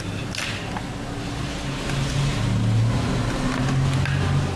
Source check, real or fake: real